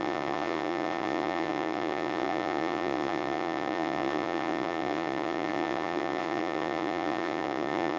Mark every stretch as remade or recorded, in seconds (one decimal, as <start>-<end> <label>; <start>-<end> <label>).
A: 0.0-8.0 remade